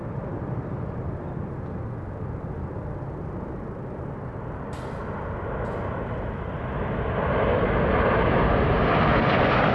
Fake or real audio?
real